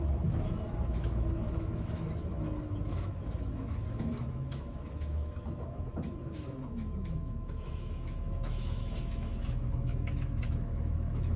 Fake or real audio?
fake